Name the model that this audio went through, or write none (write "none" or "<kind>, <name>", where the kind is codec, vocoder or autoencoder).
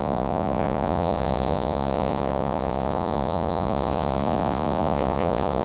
vocoder, Vocos